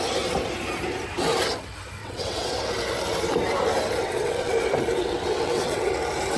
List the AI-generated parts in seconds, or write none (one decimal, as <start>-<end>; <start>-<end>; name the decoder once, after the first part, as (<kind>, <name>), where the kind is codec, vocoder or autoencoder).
2.0-2.5 (vocoder, WaveNeXt); 4.0-4.5; 5.0-5.9

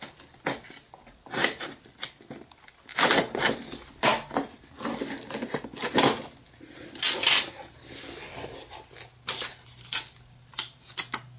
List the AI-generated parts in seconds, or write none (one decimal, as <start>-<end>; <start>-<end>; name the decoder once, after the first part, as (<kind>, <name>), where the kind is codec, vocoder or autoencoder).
none

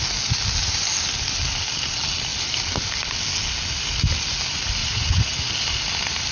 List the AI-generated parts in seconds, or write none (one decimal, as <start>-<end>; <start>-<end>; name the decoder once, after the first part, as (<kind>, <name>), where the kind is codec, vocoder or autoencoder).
4.8-5.5 (vocoder, WaveNeXt)

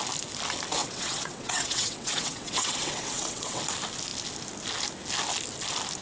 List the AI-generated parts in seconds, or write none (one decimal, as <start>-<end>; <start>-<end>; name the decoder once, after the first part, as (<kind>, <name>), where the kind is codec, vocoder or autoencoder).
0.8-3.6 (vocoder, WaveNeXt)

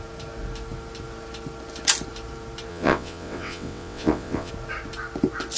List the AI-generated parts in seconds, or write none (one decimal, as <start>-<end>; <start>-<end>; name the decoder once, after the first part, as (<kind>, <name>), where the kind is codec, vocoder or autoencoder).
2.7-4.5 (vocoder, WaveNeXt)

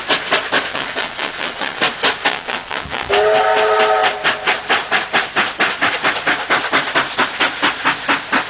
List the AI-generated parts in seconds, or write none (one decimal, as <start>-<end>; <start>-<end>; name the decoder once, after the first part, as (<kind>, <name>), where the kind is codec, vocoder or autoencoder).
0.7-1.8 (vocoder, WaveNeXt); 2.3-3.1

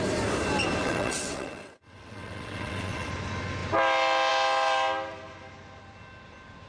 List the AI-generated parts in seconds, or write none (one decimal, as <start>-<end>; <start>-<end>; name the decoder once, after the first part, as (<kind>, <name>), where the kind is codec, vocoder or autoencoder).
0.8-3.1 (vocoder, WaveNeXt)